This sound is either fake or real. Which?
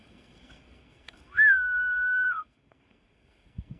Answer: fake